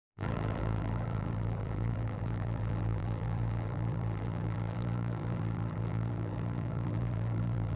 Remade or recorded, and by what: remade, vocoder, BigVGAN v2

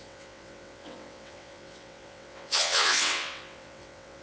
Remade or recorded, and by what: remade, vocoder, WaveNeXt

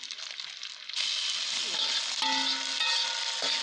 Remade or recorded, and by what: recorded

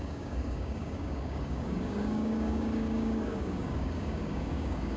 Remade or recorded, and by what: remade, codec, DAC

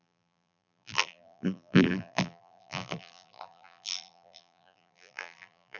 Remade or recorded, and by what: remade, vocoder, BigVGAN v2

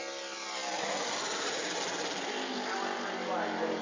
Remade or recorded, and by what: recorded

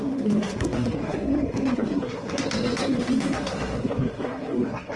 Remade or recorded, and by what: remade, codec, SNAC